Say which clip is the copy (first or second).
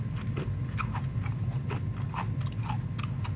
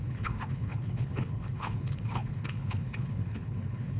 second